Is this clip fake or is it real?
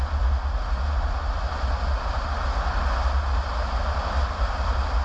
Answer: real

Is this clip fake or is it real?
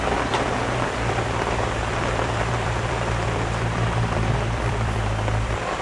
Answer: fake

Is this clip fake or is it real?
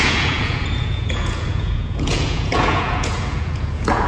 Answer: fake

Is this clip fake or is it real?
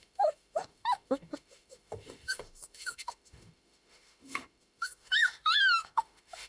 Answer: fake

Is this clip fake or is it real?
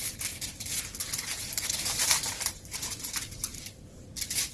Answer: fake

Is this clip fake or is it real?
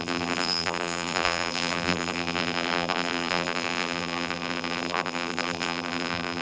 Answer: fake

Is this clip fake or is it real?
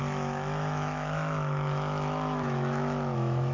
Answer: fake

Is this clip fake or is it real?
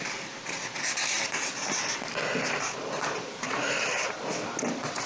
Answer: real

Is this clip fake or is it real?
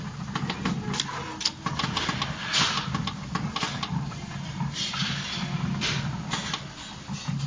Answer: real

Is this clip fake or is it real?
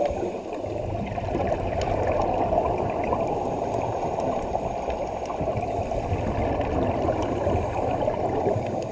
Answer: fake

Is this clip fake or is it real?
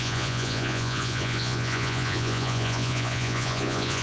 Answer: fake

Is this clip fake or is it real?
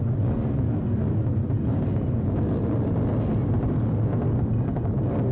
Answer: real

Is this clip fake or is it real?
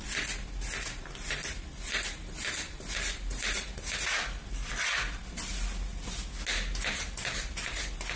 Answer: real